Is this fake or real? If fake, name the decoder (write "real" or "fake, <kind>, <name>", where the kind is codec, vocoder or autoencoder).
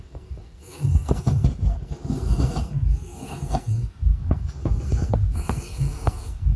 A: fake, codec, SNAC